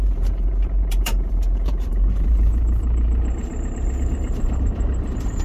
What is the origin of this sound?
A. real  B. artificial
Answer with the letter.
B